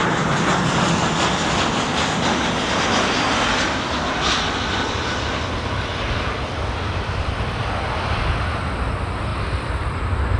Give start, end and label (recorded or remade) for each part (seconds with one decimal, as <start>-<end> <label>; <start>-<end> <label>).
0.0-10.4 recorded